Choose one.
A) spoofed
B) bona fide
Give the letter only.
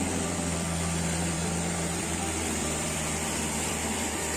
A